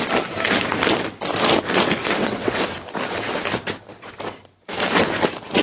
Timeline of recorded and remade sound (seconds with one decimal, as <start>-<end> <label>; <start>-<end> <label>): 0.0-2.0 recorded; 2.0-2.6 remade; 2.6-5.6 recorded